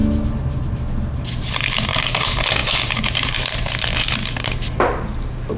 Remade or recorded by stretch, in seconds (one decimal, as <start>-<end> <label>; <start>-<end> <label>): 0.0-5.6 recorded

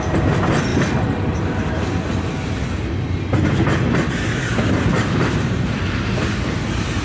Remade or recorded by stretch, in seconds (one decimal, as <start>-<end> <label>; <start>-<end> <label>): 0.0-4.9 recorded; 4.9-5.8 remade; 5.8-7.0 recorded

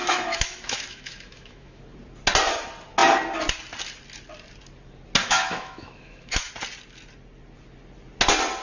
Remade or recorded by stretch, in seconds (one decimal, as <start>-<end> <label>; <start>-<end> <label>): 0.0-1.8 remade; 1.8-5.2 recorded; 5.2-6.5 remade; 6.5-8.6 recorded

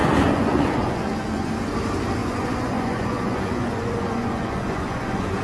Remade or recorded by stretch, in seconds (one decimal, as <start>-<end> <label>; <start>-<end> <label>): 0.0-1.5 remade; 1.5-2.2 recorded; 2.2-5.4 remade